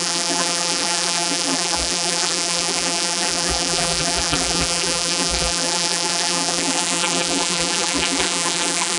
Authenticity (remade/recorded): remade